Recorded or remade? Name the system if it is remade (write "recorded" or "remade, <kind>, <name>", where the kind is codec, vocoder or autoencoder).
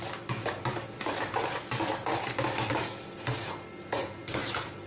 recorded